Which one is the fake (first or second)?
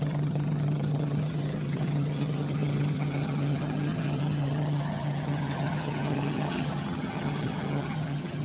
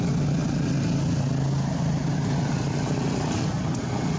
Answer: first